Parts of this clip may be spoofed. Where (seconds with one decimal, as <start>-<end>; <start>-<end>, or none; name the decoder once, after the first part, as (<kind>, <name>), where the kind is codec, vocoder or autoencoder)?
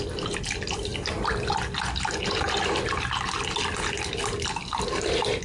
none